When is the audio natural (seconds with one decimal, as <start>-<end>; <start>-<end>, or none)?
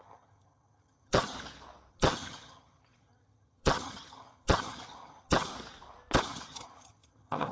1.3-1.9; 5.5-6.2